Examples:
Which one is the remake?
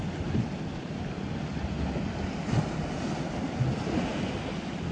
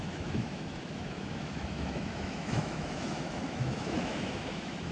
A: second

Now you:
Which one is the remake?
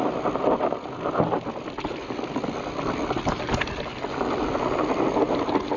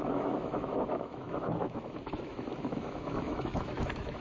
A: second